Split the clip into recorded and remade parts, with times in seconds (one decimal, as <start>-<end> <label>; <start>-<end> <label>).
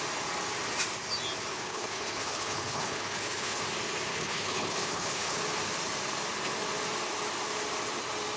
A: 0.0-1.5 recorded; 1.5-3.6 remade; 3.6-4.1 recorded; 4.1-5.4 remade; 5.4-8.4 recorded